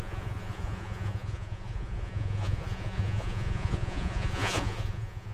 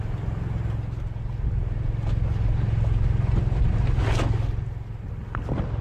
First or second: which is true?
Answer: second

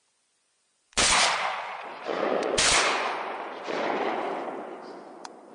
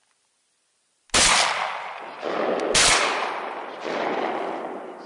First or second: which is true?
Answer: second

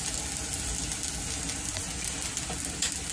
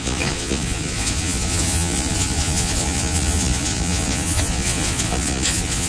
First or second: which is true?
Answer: first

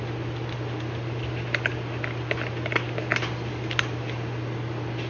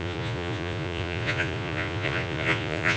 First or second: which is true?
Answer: first